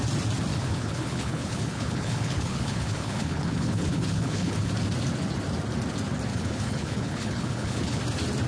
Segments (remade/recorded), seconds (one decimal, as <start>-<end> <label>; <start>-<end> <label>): 0.0-0.5 recorded; 0.5-4.7 remade; 4.7-6.3 recorded; 6.3-8.0 remade; 8.0-8.5 recorded